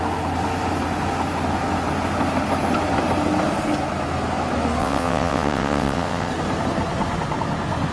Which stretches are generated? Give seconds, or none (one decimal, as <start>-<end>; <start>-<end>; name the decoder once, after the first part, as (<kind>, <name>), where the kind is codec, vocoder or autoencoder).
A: 4.8-6.3 (vocoder, WaveNeXt)